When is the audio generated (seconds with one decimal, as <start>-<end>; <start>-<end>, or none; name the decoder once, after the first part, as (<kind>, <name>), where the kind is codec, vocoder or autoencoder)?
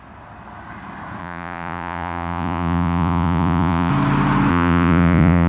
1.2-3.9 (vocoder, Vocos); 4.5-5.5